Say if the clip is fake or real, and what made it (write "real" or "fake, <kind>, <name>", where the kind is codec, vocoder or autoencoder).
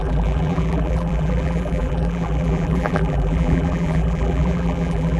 fake, vocoder, BigVGAN v2